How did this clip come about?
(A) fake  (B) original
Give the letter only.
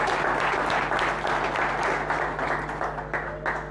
B